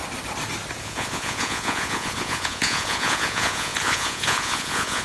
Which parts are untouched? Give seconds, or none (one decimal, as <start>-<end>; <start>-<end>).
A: 0.0-0.8